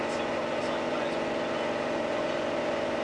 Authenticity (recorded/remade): remade